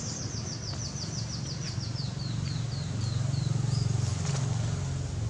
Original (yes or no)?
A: yes